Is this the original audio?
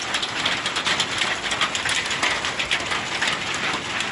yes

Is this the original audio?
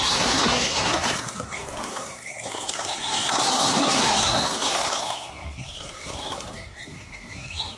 no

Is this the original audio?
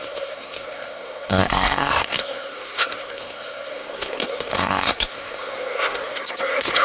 no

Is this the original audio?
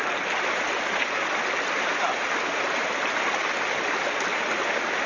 yes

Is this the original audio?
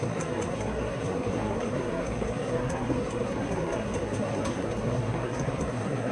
no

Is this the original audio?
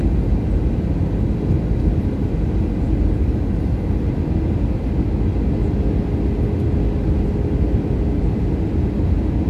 yes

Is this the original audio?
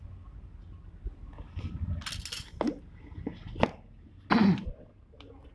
yes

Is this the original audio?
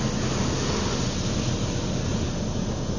yes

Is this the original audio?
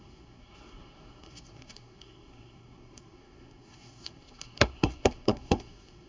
no